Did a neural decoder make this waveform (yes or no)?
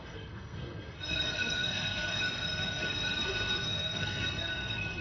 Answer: yes